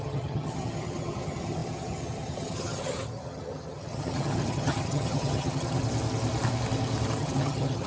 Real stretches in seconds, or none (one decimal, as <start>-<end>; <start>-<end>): 5.8-7.2